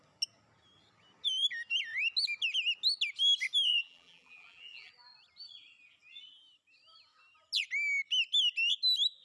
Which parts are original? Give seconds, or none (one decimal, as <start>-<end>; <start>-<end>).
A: 0.0-3.7; 4.9-9.2